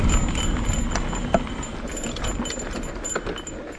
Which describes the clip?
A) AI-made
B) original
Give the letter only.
B